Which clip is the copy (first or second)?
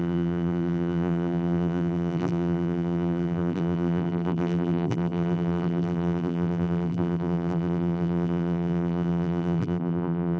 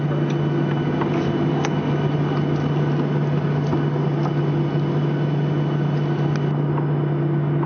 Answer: first